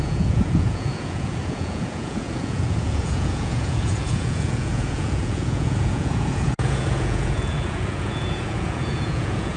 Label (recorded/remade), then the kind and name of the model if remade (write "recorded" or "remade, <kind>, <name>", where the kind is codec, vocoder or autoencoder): remade, vocoder, Vocos